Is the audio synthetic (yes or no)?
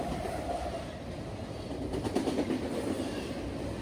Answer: no